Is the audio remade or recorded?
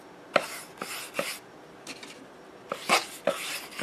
recorded